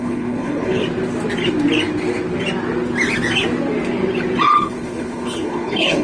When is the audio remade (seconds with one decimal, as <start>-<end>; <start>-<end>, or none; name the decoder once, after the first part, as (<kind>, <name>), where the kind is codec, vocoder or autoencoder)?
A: 0.0-0.8 (codec, HILCodec); 4.4-6.0